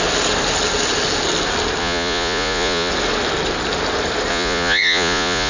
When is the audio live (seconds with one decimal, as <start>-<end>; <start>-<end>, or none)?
0.0-1.8; 2.9-4.3